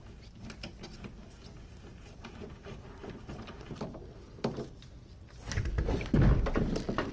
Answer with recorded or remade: recorded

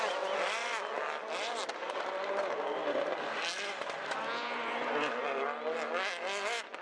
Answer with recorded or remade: recorded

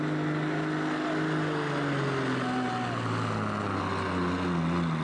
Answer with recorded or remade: recorded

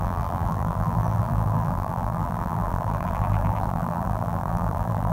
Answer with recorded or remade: remade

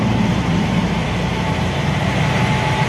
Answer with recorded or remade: remade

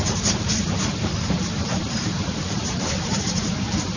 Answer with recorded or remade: remade